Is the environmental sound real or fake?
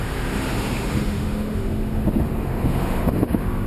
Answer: fake